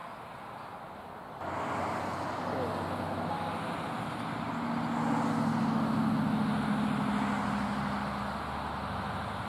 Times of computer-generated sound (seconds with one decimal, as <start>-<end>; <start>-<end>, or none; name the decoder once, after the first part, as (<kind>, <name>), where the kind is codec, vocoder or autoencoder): none